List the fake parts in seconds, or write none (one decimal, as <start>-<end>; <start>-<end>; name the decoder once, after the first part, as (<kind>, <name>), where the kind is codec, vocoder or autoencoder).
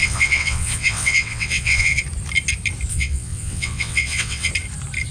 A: 0.0-2.0 (vocoder, WaveNeXt); 2.9-4.5